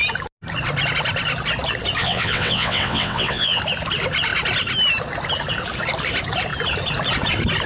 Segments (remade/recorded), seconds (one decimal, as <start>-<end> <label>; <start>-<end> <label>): 0.0-2.0 recorded; 2.0-3.6 remade; 3.6-7.7 recorded